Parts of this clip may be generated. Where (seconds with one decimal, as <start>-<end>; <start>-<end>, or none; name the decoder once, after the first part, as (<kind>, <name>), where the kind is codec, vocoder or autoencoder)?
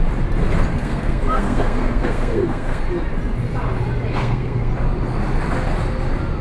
0.7-2.8 (codec, SNAC); 4.1-4.7